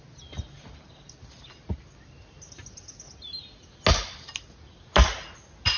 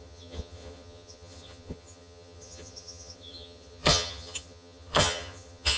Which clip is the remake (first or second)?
second